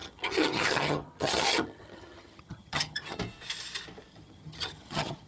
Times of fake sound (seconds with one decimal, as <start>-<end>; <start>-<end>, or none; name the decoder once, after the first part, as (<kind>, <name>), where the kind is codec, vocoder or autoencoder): 0.0-3.2 (vocoder, HiFi-GAN); 4.1-5.3